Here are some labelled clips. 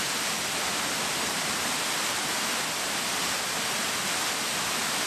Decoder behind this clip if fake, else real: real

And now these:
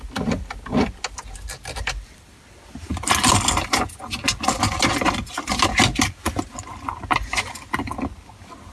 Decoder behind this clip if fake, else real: real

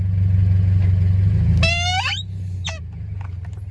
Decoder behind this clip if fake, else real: real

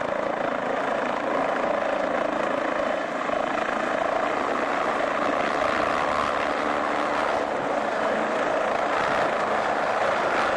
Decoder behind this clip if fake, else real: real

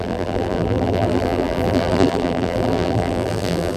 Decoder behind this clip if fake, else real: fake, vocoder, BigVGAN v2